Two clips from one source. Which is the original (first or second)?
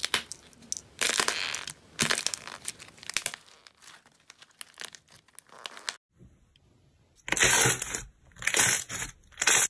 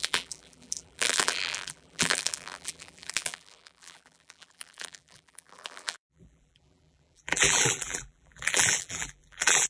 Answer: first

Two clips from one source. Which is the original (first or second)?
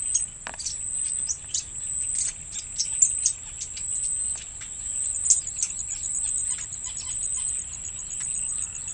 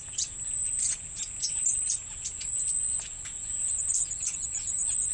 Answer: first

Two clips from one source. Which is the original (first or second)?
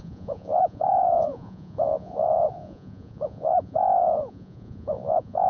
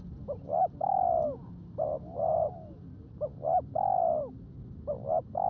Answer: second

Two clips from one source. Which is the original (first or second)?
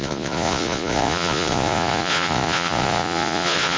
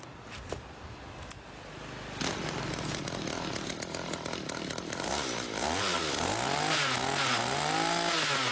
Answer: second